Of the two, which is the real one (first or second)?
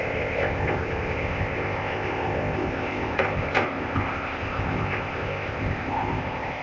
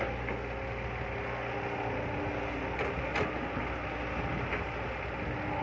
second